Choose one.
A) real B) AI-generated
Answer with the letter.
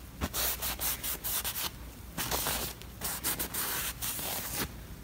A